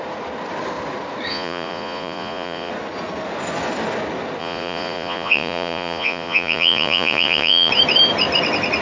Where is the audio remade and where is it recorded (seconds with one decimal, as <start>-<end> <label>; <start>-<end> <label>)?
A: 0.0-1.3 recorded; 1.3-2.7 remade; 2.7-4.4 recorded; 4.4-7.7 remade; 7.7-8.8 recorded